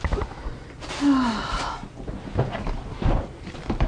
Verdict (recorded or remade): recorded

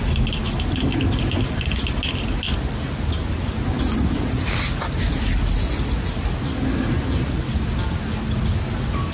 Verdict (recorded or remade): recorded